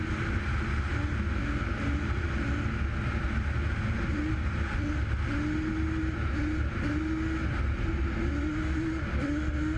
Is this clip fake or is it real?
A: real